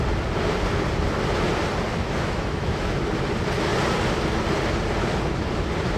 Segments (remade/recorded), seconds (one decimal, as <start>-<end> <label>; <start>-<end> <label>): 0.0-1.9 recorded; 1.9-3.0 remade; 3.0-6.0 recorded